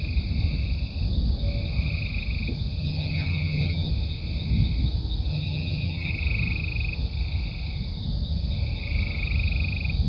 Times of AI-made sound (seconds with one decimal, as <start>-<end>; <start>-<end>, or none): 2.8-3.9; 5.3-6.1